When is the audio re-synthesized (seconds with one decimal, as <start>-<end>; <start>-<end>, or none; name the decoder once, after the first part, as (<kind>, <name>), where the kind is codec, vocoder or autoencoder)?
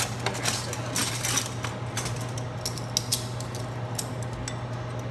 none